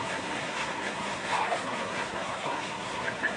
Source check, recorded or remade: remade